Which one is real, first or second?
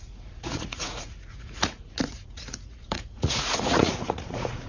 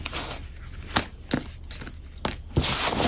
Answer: second